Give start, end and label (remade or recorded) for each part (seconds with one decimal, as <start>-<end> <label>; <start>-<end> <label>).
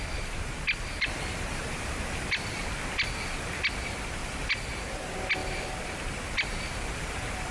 0.0-4.2 recorded; 4.2-4.8 remade; 4.8-5.4 recorded; 5.4-6.2 remade; 6.2-7.5 recorded